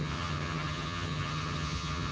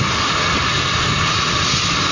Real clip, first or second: second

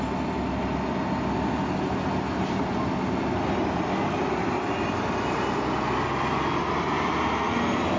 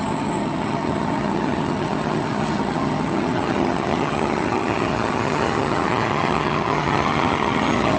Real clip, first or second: first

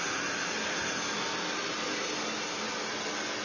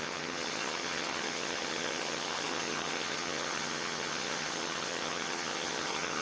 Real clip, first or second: first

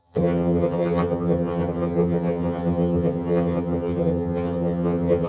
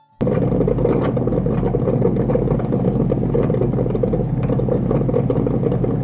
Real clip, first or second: second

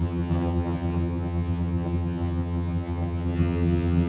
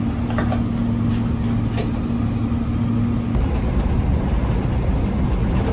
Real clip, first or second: second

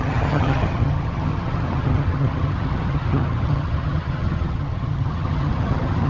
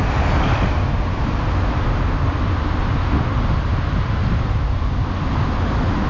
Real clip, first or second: second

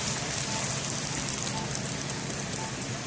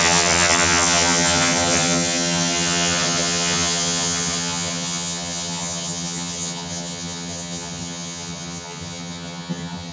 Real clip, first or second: first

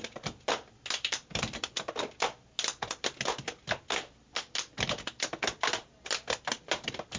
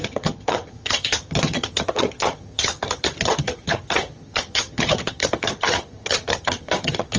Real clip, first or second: first